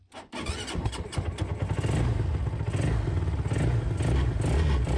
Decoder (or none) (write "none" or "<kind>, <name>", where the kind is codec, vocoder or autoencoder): none